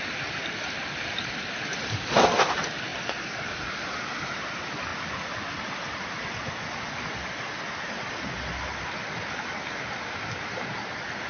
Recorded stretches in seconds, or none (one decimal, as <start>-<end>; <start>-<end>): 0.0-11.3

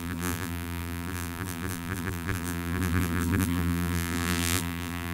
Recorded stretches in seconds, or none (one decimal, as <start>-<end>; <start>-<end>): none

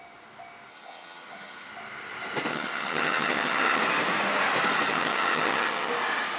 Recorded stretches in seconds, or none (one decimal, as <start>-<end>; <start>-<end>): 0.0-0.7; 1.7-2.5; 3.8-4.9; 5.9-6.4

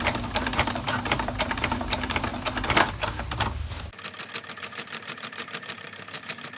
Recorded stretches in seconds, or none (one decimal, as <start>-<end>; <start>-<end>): 2.3-4.5